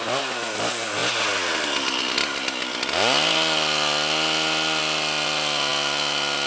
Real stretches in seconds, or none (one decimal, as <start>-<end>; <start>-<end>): 0.0-6.5